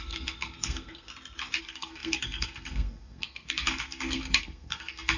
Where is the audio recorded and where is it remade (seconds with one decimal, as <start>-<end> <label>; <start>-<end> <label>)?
0.0-1.1 remade; 1.1-1.6 recorded; 1.6-5.2 remade